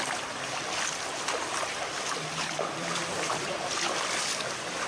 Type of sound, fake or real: fake